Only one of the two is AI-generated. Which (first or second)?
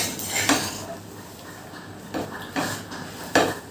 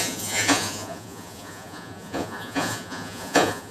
second